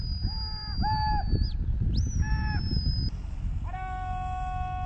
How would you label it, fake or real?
real